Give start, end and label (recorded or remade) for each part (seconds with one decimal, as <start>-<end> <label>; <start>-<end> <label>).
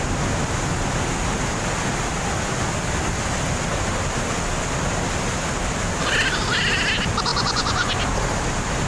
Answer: 0.0-7.3 recorded; 7.3-7.9 remade; 7.9-8.9 recorded